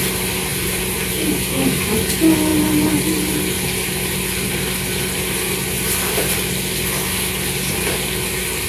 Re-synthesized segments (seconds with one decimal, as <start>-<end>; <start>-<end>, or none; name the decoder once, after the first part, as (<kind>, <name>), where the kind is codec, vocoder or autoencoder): 0.5-1.1 (vocoder, BigVGAN v2)